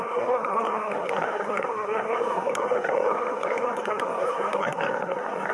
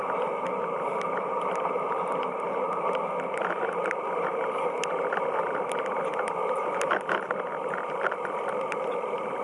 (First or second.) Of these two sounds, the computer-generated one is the first